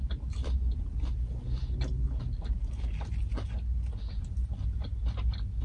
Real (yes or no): yes